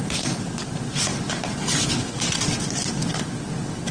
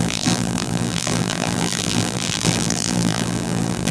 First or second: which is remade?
second